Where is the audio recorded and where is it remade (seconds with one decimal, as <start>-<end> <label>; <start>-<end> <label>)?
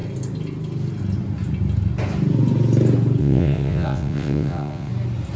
0.0-3.2 recorded; 3.2-4.9 remade; 4.9-5.4 recorded